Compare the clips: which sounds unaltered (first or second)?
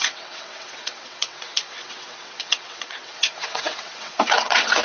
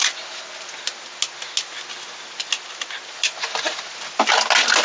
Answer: second